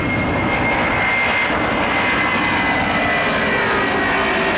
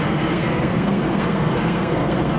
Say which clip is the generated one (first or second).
second